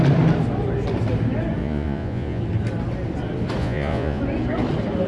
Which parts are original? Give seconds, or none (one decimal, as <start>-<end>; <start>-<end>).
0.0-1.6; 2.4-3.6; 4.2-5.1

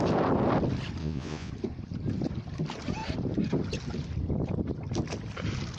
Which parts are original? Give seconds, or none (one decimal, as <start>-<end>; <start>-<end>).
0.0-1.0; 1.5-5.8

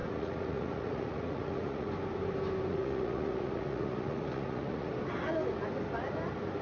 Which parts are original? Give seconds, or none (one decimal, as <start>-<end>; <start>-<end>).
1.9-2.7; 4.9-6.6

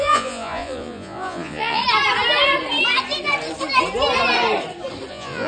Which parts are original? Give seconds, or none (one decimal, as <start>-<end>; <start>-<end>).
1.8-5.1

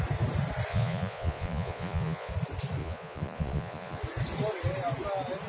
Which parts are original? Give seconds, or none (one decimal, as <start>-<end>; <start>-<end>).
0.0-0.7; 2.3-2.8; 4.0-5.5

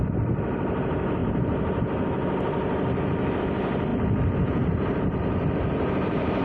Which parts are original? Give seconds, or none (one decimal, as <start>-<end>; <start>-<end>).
0.0-6.4

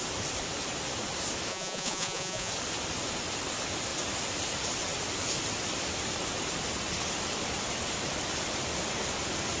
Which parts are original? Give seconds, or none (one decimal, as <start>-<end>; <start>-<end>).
0.0-1.5; 2.5-9.6